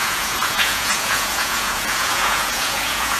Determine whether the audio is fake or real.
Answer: fake